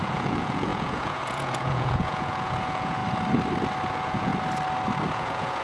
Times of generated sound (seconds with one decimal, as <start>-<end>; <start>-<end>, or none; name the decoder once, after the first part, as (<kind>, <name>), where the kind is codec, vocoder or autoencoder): 0.0-3.0 (vocoder, Vocos); 3.9-4.3; 5.1-5.6